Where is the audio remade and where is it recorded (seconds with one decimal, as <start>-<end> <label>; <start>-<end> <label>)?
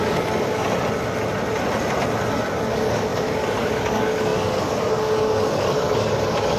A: 0.0-0.6 remade; 0.6-2.7 recorded; 2.7-6.6 remade